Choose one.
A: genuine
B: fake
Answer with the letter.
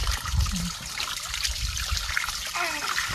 A